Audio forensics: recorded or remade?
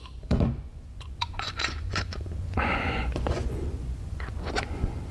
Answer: remade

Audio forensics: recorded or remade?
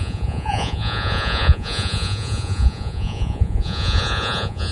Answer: remade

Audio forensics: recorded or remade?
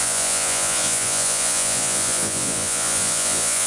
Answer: remade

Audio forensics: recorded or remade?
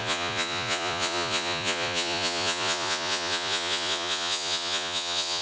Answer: remade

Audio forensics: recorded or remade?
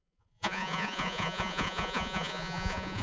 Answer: remade